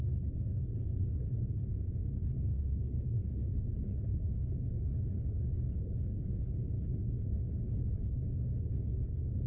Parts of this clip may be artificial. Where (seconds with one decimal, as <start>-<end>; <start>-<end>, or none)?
0.0-1.6; 2.1-9.5